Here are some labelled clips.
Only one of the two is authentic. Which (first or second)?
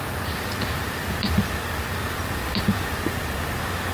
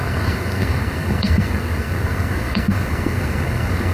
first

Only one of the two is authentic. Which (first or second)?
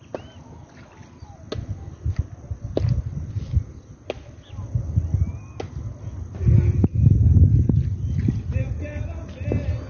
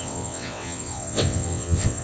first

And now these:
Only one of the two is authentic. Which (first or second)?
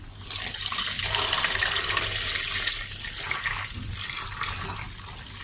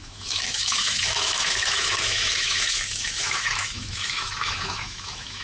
first